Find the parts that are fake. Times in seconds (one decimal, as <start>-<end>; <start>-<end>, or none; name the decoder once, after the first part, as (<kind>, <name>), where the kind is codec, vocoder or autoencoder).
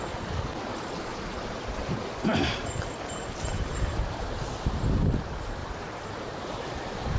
0.7-2.7 (vocoder, BigVGAN v2); 3.5-4.3; 5.6-7.2